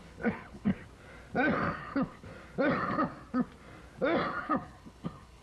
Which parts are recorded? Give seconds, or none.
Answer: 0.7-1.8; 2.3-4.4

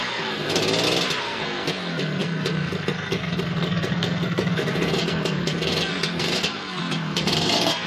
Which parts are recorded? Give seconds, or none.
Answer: 0.6-1.2

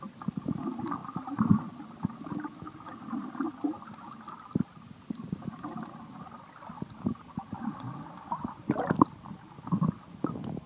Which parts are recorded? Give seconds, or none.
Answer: 0.0-1.0; 1.7-10.7

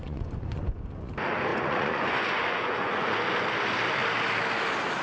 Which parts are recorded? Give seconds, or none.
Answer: 1.1-1.5; 3.2-5.0

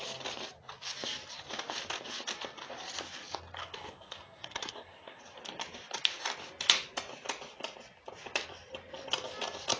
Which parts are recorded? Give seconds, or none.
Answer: 0.0-3.6; 5.2-9.8

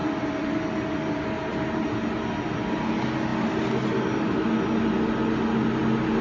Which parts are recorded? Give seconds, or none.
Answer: 0.0-6.2